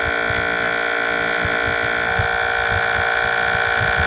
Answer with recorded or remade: recorded